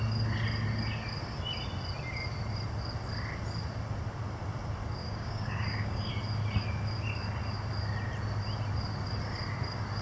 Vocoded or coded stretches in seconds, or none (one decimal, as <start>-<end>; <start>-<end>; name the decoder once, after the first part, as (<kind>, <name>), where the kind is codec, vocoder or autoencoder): 5.0-6.1 (codec, DAC)